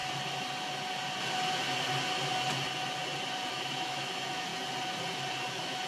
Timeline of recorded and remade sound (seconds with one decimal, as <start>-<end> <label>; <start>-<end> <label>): 0.0-3.5 recorded; 3.5-4.5 remade; 4.5-5.5 recorded; 5.5-5.9 remade